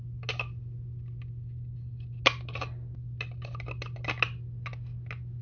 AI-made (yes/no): no